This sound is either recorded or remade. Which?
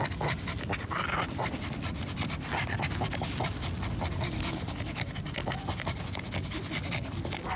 recorded